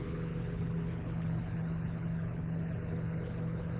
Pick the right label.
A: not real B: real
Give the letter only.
A